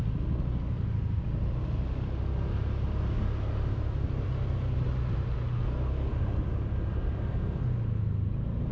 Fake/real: real